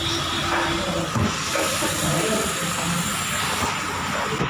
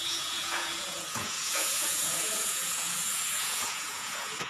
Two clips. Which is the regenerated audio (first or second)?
second